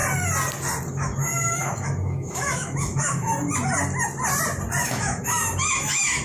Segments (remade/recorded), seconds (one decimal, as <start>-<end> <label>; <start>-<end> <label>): 0.0-0.9 recorded; 0.9-3.3 remade; 3.3-4.8 recorded; 4.8-6.2 remade